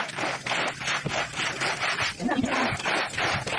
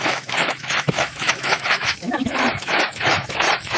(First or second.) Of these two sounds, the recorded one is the first